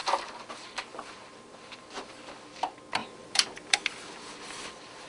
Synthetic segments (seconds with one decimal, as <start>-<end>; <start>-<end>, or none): 0.0-0.5; 0.9-2.1; 3.0-3.8